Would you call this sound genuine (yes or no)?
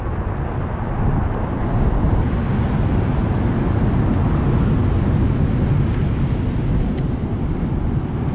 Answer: yes